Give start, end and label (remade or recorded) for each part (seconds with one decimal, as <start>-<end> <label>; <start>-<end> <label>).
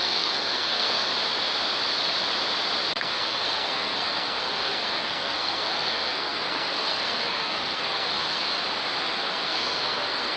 0.0-1.1 remade; 1.1-2.9 recorded; 2.9-8.5 remade; 8.5-9.0 recorded; 9.0-10.4 remade